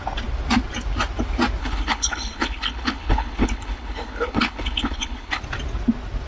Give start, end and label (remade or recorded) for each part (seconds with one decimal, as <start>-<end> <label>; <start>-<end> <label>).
0.0-1.6 recorded; 1.6-5.4 remade; 5.4-6.3 recorded